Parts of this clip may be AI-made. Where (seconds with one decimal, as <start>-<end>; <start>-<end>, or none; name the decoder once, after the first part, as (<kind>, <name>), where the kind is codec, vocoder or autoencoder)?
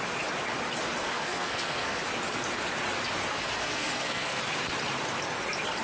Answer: 1.0-2.0 (codec, SNAC); 3.6-4.4